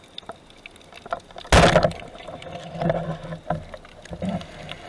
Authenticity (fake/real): real